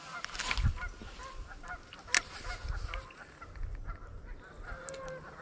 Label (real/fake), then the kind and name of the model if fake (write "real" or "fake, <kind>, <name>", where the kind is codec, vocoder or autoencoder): real